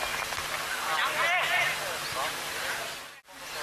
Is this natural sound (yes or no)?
yes